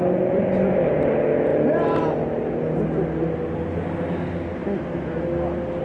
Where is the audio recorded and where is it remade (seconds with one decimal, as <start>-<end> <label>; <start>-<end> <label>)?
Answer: 0.0-5.8 recorded